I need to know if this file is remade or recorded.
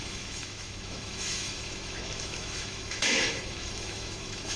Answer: remade